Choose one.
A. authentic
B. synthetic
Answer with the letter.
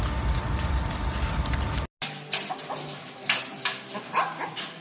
A